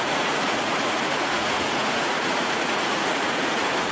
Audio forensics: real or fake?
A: fake